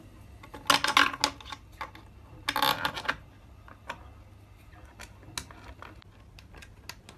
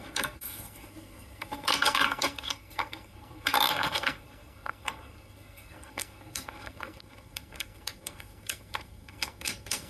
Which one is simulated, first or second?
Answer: second